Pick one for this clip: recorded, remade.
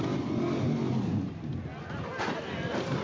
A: recorded